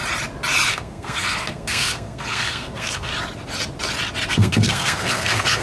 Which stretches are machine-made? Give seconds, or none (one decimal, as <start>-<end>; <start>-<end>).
0.7-3.1; 4.3-5.6